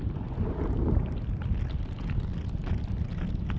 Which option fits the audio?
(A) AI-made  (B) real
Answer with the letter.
B